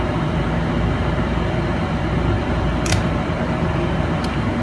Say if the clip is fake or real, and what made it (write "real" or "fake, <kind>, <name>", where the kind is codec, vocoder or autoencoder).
fake, vocoder, BigVGAN v2